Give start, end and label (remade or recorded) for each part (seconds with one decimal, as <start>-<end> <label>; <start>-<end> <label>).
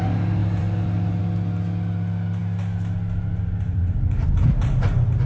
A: 0.0-0.4 recorded; 0.4-1.2 remade; 1.2-5.3 recorded